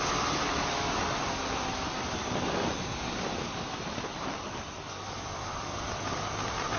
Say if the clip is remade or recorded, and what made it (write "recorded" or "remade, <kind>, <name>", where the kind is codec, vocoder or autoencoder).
recorded